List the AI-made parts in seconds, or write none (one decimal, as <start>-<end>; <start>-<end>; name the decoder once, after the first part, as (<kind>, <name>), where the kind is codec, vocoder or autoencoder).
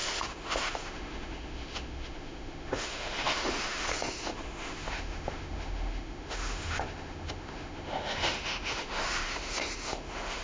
0.0-10.4 (autoencoder, DAC-VAE)